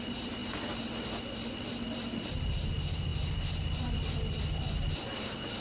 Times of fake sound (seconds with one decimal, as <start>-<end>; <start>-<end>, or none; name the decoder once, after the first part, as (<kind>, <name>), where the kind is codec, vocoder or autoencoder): none